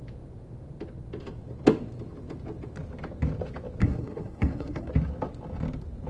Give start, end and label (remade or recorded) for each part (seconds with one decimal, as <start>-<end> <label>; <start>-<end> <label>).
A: 0.0-3.8 recorded; 3.8-4.9 remade; 4.9-6.1 recorded